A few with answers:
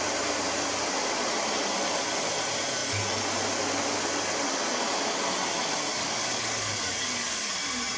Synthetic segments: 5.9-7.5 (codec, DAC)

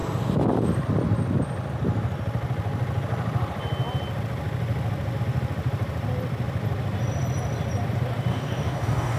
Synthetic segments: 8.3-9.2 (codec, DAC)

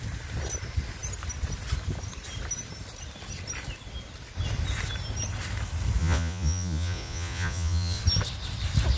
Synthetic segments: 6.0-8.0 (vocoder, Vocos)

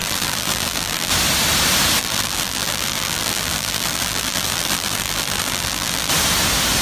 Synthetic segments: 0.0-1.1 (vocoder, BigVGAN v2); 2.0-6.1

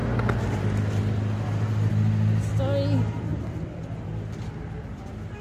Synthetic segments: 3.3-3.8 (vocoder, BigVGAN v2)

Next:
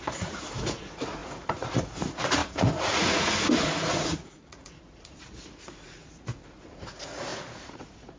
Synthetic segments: 0.0-8.2 (vocoder, Vocos)

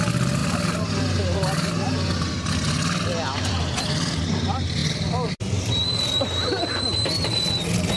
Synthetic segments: none

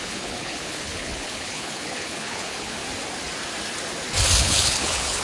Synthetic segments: 0.0-2.8 (codec, HILCodec); 4.4-5.2